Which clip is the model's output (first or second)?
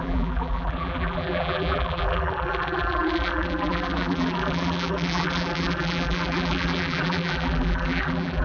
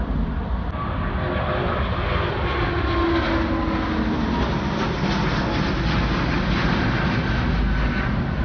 first